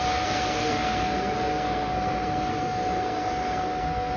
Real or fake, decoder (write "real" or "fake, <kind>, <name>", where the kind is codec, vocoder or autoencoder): fake, codec, SNAC